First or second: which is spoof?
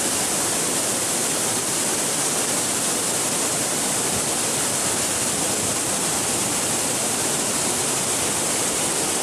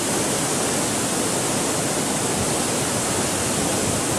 first